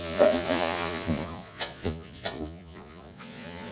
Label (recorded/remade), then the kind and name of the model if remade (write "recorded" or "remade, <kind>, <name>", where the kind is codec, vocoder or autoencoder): remade, vocoder, Vocos